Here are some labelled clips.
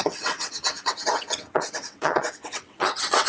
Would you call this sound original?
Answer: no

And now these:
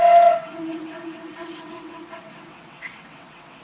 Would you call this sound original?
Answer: no